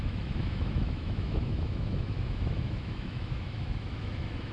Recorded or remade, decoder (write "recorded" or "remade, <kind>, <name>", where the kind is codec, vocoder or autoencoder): remade, autoencoder, DAC-VAE